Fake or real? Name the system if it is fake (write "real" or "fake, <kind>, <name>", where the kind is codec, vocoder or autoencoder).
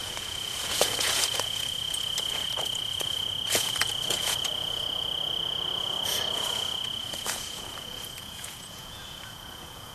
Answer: fake, vocoder, Vocos